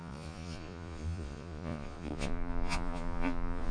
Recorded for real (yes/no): no